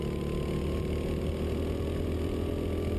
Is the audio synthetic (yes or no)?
no